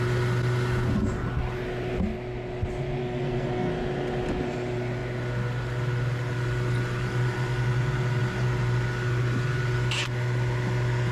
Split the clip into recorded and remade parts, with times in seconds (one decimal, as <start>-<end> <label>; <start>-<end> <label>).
0.0-3.0 recorded; 3.0-3.7 remade; 3.7-11.1 recorded

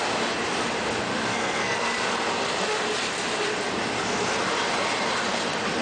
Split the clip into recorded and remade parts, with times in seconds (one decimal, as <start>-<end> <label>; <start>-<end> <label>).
0.0-1.3 recorded; 1.3-1.9 remade; 1.9-5.8 recorded

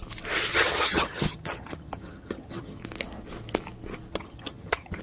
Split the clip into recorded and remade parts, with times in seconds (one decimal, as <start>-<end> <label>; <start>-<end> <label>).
0.0-0.5 recorded; 0.5-2.8 remade; 2.8-4.1 recorded; 4.1-5.0 remade

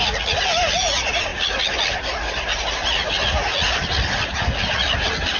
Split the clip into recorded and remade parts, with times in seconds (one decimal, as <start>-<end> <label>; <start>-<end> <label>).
0.0-5.4 recorded

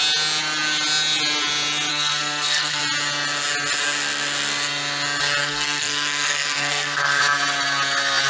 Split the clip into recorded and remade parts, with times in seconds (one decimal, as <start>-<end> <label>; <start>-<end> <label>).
0.0-1.9 recorded; 1.9-2.8 remade; 2.8-5.4 recorded; 5.4-7.2 remade; 7.2-8.3 recorded

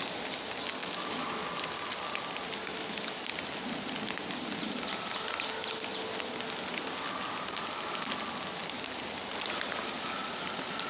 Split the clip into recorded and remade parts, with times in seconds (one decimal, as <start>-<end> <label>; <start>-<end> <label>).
0.0-0.8 recorded; 0.8-1.4 remade; 1.4-2.7 recorded; 2.7-3.2 remade; 3.2-10.9 recorded

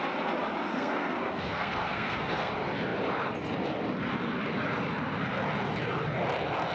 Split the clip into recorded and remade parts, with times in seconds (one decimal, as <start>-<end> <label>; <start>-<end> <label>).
0.0-0.7 recorded; 0.7-2.5 remade; 2.5-6.7 recorded

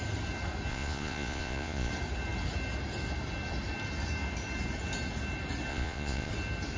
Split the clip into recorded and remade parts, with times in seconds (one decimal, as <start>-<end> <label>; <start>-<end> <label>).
0.0-0.7 recorded; 0.7-1.9 remade; 1.9-5.7 recorded; 5.7-6.3 remade; 6.3-6.8 recorded